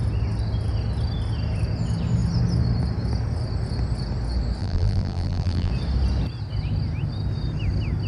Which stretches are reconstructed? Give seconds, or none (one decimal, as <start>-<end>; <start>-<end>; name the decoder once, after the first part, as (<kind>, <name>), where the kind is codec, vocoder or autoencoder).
4.6-5.7 (vocoder, BigVGAN v2)